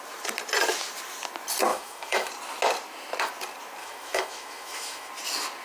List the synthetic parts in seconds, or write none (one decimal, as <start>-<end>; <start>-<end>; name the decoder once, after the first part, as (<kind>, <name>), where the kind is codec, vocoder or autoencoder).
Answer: 1.7-2.3 (autoencoder, DAC-VAE); 3.8-5.1